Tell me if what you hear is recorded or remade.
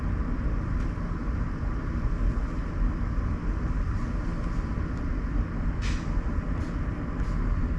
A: recorded